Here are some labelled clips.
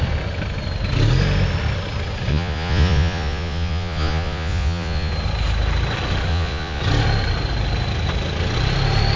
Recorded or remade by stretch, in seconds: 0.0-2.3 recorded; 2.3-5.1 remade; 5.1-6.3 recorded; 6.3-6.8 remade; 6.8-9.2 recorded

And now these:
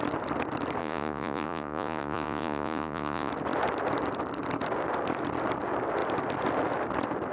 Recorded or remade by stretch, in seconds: 0.0-0.8 recorded; 0.8-3.3 remade; 3.3-7.3 recorded